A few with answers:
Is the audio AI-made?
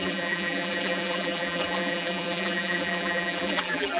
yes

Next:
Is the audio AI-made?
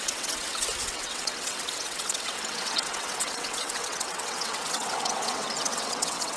yes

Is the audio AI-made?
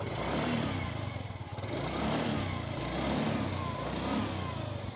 no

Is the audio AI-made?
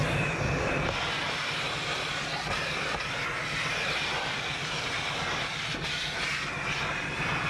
no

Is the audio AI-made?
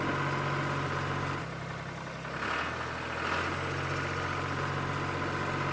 no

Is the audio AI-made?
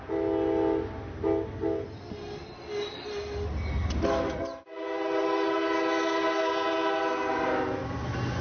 no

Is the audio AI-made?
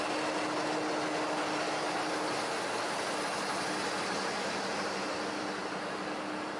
no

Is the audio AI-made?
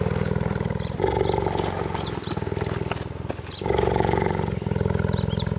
no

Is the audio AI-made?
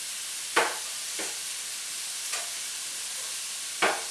no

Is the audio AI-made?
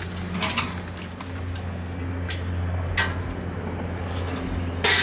no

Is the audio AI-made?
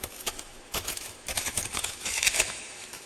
yes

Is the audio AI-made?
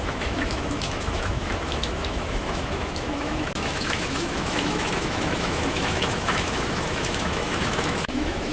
yes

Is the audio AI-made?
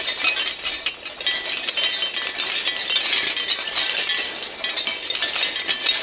no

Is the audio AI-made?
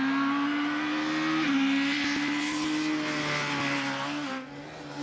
no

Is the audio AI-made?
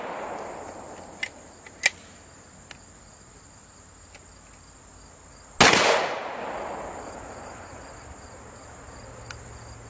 no